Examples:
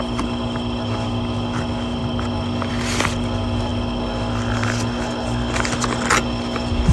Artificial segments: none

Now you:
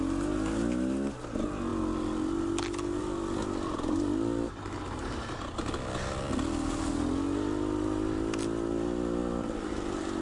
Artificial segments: none

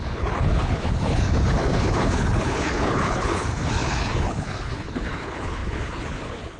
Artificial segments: 0.0-6.6 (codec, HILCodec)

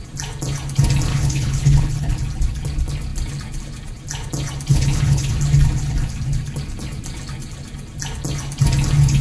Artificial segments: 1.1-2.1 (codec, HILCodec); 4.7-5.3

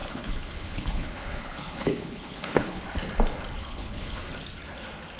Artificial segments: 0.0-2.8 (codec, HILCodec); 3.6-4.2

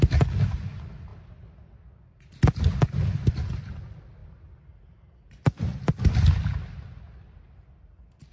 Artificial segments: none